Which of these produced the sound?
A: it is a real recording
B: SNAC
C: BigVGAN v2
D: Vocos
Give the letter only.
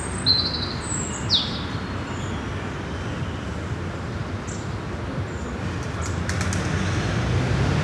A